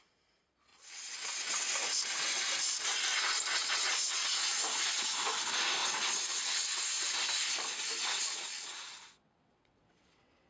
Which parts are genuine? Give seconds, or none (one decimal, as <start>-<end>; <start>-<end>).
0.0-0.7; 1.6-3.6; 4.3-5.8; 6.8-8.0